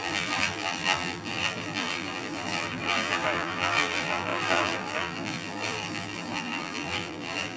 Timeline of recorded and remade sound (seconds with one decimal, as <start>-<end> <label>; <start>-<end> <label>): 0.0-7.6 remade